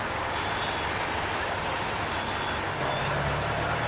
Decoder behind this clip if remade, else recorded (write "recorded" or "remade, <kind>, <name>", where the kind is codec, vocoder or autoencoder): recorded